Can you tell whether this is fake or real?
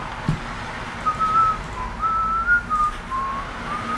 real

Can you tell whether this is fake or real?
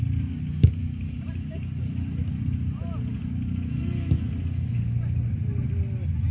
real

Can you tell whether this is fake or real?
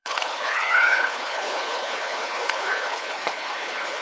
fake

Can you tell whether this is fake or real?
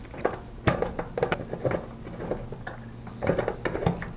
real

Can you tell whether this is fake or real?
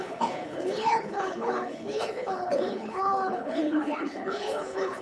fake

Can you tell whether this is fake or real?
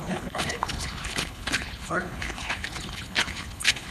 fake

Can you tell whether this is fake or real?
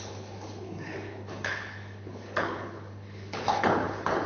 fake